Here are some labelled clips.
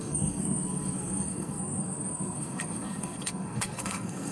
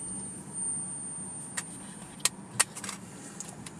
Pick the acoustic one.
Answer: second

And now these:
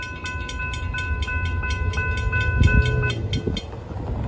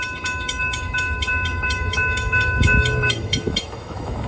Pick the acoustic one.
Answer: first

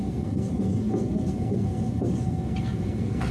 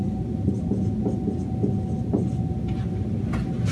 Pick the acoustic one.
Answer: second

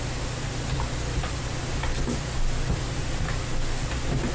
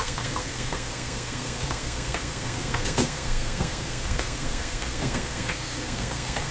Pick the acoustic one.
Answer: first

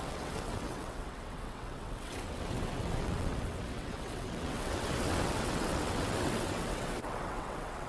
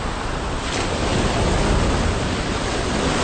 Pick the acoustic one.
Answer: second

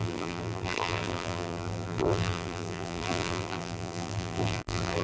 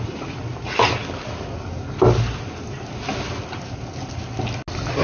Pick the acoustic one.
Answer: second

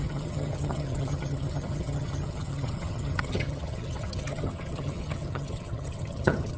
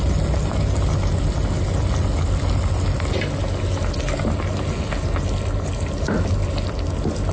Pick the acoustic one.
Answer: second